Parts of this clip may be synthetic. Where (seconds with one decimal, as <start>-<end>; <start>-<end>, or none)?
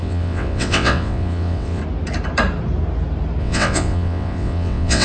0.0-1.8; 3.4-5.0